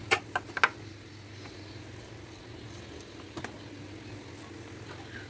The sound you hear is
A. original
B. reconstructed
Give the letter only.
A